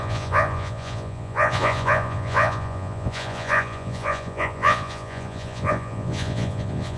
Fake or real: fake